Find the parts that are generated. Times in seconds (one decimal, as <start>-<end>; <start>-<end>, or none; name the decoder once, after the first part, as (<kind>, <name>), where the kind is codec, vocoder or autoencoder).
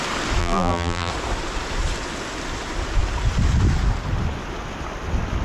0.4-1.1 (vocoder, BigVGAN v2)